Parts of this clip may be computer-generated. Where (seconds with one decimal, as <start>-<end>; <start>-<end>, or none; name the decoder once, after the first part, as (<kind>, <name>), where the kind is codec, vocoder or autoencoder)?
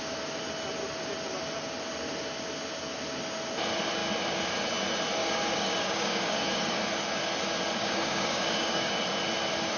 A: 5.2-6.8 (codec, DAC); 7.8-8.9